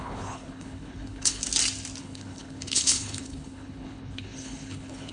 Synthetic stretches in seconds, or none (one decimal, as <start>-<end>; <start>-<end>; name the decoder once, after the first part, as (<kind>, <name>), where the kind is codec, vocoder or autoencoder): 0.0-1.4 (codec, HILCodec); 2.0-5.1